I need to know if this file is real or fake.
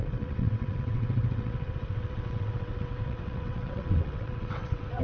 fake